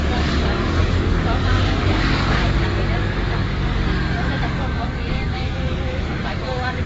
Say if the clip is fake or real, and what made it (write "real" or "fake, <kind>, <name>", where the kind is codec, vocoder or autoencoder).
fake, codec, DAC